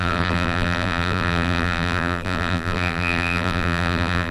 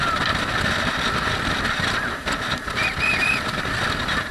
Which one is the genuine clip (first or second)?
second